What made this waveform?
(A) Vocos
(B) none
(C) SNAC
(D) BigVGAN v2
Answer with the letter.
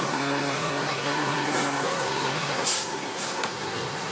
C